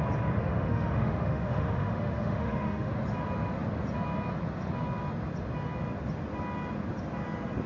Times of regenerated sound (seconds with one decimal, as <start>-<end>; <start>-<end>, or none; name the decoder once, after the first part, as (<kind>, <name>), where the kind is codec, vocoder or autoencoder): 0.4-2.9 (autoencoder, DAC-VAE)